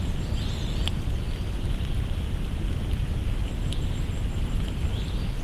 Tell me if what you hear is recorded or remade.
recorded